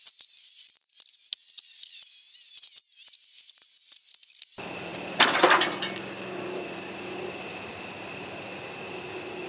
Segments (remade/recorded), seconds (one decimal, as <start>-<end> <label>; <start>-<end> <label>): 0.0-1.4 recorded; 1.4-2.0 remade; 2.0-9.5 recorded